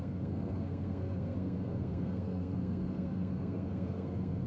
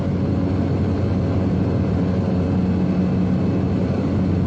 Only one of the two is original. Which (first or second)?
second